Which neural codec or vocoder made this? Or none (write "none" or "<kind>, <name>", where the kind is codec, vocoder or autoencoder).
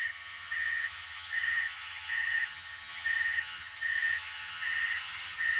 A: vocoder, HiFi-GAN